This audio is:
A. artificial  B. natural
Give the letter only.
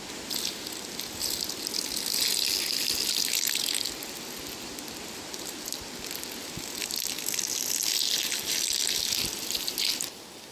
B